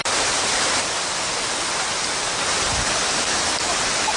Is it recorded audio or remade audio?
recorded